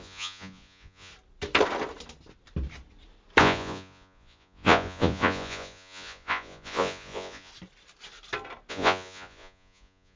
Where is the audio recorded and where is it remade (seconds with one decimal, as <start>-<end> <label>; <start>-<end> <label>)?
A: 0.0-1.1 remade; 1.1-3.4 recorded; 3.4-7.5 remade; 7.5-8.7 recorded; 8.7-10.2 remade